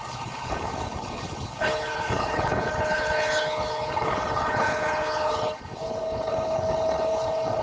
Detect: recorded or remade remade